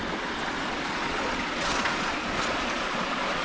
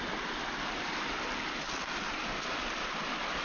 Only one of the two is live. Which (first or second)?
second